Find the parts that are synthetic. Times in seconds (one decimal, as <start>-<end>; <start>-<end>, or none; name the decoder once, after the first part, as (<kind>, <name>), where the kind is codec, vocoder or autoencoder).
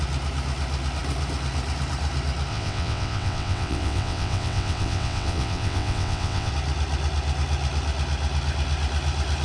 2.5-6.5 (vocoder, WaveNeXt)